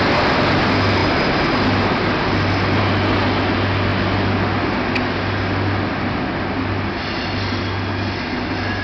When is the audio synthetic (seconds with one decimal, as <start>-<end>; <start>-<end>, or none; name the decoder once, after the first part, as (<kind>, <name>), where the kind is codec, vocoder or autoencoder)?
none